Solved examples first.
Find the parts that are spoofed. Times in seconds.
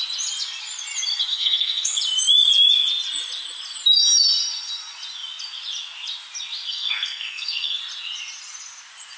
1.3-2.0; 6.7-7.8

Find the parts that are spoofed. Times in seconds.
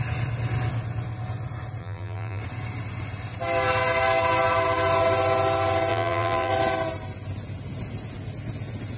1.8-2.4; 5.9-6.5